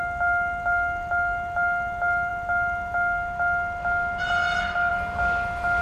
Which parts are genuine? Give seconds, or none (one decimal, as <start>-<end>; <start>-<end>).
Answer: 0.0-5.8